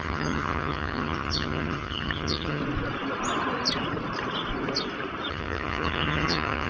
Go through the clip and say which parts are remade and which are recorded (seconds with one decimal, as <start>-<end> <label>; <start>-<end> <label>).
0.0-2.6 remade; 2.6-5.3 recorded; 5.3-6.7 remade